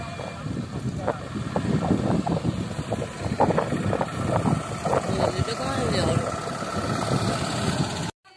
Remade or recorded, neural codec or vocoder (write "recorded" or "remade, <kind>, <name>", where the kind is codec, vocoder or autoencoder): recorded